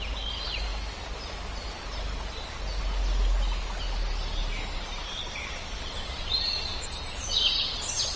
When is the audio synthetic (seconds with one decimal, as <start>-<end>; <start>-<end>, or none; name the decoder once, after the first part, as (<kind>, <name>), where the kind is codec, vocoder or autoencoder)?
6.7-7.4 (vocoder, BigVGAN v2)